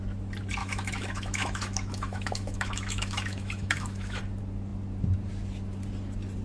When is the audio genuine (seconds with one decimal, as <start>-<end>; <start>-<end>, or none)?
0.0-0.6; 4.2-6.4